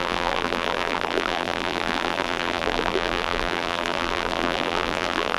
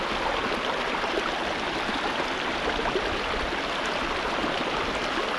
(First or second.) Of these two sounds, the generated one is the first